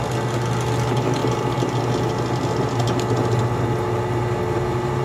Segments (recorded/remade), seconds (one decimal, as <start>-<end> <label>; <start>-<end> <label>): 0.0-5.0 recorded